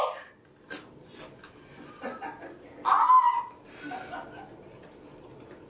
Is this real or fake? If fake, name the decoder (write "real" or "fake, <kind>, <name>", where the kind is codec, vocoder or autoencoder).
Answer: real